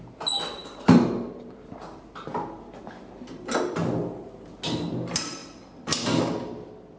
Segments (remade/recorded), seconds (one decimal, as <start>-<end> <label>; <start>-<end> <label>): 0.0-0.6 recorded; 0.6-1.7 remade; 1.7-7.0 recorded